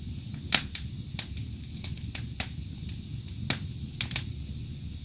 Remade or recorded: recorded